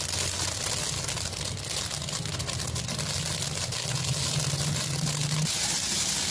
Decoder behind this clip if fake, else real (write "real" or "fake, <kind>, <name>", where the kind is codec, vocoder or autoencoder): real